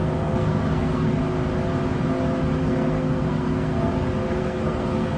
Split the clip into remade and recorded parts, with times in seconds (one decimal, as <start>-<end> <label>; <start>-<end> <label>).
0.0-1.2 remade; 1.2-2.6 recorded; 2.6-3.9 remade; 3.9-4.3 recorded; 4.3-5.2 remade